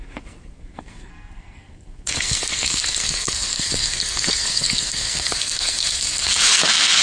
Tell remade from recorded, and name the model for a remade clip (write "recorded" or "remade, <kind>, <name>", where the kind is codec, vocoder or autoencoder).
remade, codec, SNAC